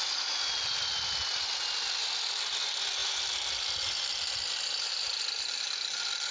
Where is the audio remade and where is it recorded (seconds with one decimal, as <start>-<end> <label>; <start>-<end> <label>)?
0.0-6.3 recorded

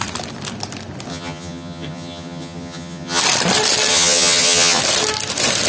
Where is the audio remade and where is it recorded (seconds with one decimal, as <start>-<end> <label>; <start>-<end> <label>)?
0.0-1.1 recorded; 1.1-3.2 remade; 3.2-3.9 recorded; 3.9-4.8 remade; 4.8-5.7 recorded

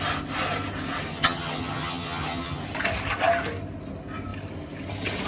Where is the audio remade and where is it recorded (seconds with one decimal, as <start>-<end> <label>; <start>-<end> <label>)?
0.0-1.1 recorded; 1.1-2.6 remade; 2.6-5.3 recorded

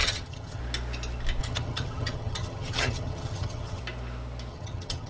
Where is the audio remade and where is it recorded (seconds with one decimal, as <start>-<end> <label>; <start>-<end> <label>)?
0.0-0.6 remade; 0.6-1.4 recorded; 1.4-3.8 remade; 3.8-4.5 recorded; 4.5-5.1 remade

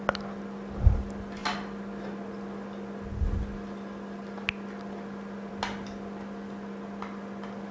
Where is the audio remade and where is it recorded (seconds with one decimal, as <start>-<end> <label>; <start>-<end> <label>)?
0.0-7.7 recorded

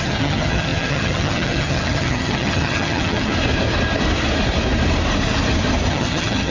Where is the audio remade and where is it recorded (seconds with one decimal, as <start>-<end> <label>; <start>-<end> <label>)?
0.0-3.3 remade; 3.3-5.9 recorded; 5.9-6.5 remade